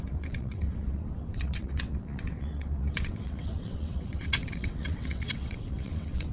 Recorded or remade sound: remade